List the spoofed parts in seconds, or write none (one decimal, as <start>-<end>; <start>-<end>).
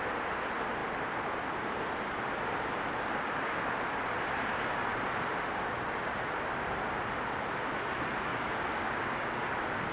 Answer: 8.3-9.4